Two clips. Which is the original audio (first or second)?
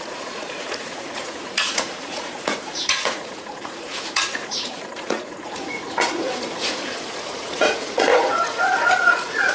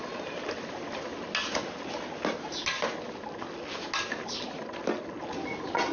second